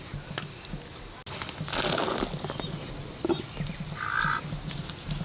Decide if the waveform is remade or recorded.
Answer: recorded